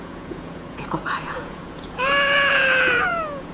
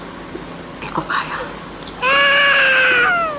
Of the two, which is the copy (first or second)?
first